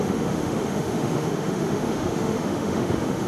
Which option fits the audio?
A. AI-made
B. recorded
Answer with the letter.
A